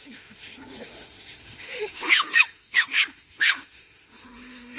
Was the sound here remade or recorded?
remade